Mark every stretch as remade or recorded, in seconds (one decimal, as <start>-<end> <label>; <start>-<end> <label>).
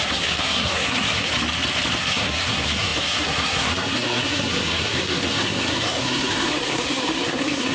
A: 0.0-1.3 remade; 1.3-2.0 recorded; 2.0-7.7 remade